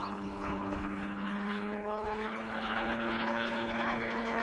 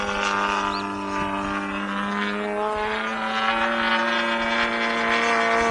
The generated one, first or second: first